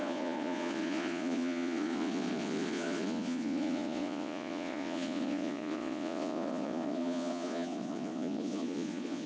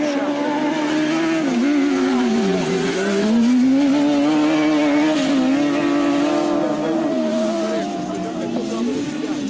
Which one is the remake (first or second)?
first